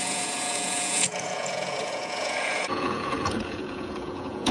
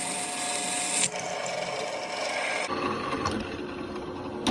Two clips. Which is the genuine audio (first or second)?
second